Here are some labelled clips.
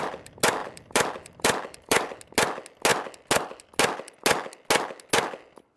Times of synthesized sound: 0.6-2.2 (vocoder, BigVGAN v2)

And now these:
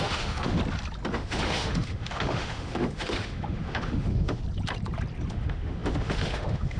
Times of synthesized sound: 0.0-0.6 (autoencoder, DAC-VAE); 1.1-4.4; 5.3-6.8

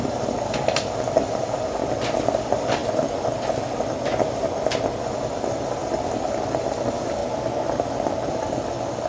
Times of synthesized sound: 0.0-1.8 (vocoder, BigVGAN v2); 2.4-2.8; 5.0-7.2; 8.3-9.1

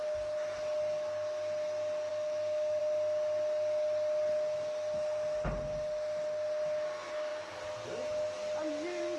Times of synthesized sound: 2.1-2.8 (autoencoder, DAC-VAE)

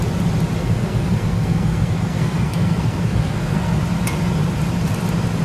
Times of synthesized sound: 0.6-3.8 (codec, SNAC)

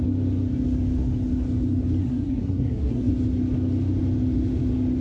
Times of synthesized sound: 2.0-3.1 (codec, SNAC)

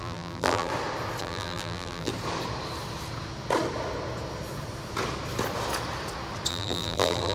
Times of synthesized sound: 0.0-0.7 (vocoder, BigVGAN v2); 1.2-2.1; 6.5-7.3

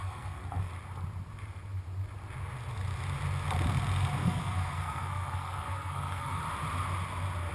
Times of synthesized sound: 0.0-0.7 (codec, SNAC); 4.2-6.4